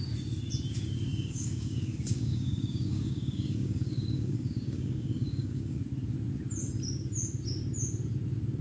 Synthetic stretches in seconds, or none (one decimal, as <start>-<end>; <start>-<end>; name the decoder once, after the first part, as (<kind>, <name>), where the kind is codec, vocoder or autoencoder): 1.1-5.8 (codec, DAC)